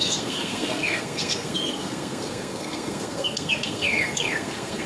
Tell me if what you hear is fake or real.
fake